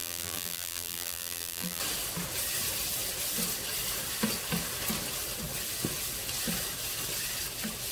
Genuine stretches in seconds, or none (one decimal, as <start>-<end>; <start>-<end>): 1.8-7.9